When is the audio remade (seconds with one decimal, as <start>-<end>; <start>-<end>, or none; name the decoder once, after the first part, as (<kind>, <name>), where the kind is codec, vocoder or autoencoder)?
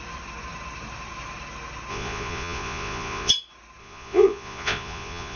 1.9-3.3 (vocoder, Vocos); 3.8-5.4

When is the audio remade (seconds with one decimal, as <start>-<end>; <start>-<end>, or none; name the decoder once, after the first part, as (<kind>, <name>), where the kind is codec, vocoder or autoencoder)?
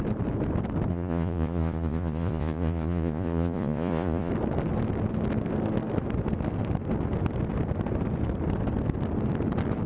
0.9-4.3 (vocoder, Vocos)